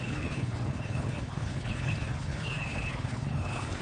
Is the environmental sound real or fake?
fake